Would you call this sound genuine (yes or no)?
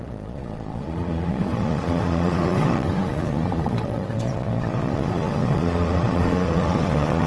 no